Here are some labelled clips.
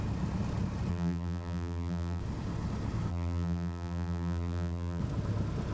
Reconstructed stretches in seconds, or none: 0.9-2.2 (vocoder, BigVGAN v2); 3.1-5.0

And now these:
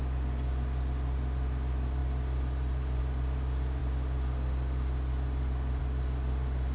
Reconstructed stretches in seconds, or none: none

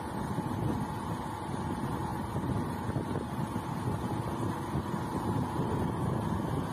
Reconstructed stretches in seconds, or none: none

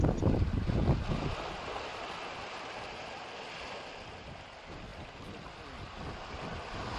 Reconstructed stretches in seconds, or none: 0.0-7.0 (vocoder, BigVGAN v2)

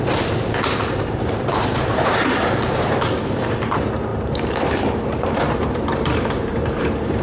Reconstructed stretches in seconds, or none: 0.0-7.2 (vocoder, BigVGAN v2)